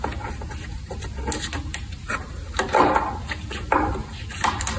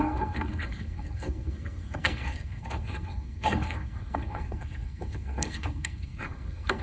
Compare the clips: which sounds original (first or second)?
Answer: first